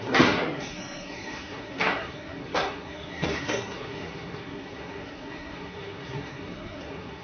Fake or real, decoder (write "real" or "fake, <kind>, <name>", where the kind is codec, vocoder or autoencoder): fake, codec, SNAC